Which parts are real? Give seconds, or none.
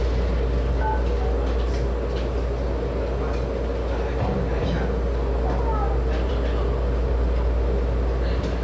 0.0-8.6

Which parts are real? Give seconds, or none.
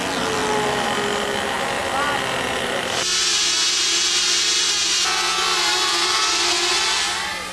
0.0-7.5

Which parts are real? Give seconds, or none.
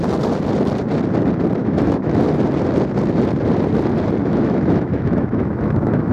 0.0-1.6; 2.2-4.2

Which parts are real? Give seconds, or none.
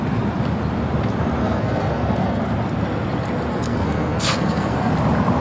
0.0-1.4; 2.4-3.5; 4.9-5.4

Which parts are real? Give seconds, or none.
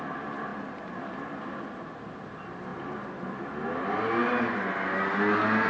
0.0-5.7